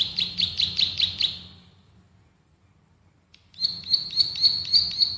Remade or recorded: recorded